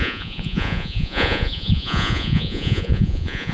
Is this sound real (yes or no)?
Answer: no